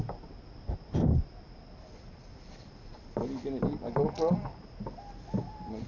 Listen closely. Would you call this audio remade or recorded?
recorded